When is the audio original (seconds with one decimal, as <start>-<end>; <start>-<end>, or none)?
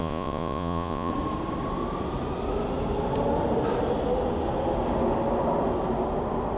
1.1-6.6